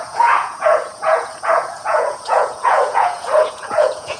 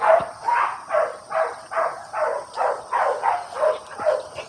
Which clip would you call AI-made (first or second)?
first